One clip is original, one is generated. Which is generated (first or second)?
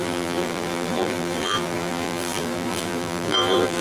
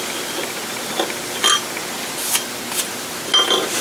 first